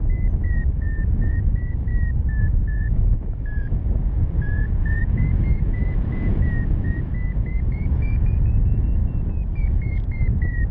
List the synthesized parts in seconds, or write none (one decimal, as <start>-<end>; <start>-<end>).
0.0-1.9; 2.4-9.0; 9.6-10.7